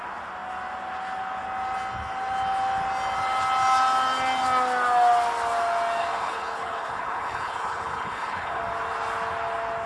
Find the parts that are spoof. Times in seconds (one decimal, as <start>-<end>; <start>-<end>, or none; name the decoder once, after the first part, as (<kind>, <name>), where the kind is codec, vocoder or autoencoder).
6.0-8.6 (codec, HILCodec)